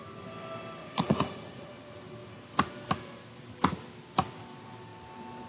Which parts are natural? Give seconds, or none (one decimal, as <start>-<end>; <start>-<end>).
0.0-0.8; 1.7-5.5